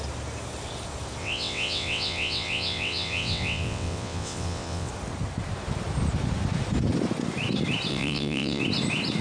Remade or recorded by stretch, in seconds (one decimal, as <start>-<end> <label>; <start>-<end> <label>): 0.0-1.2 recorded; 1.2-4.9 remade; 4.9-7.9 recorded; 7.9-8.6 remade; 8.6-9.2 recorded